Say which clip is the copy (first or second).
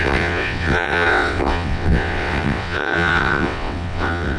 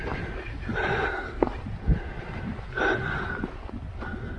first